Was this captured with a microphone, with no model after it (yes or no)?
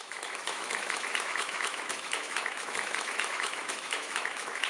no